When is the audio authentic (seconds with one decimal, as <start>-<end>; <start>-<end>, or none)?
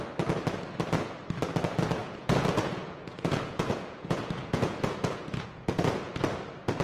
0.0-2.0; 6.1-6.8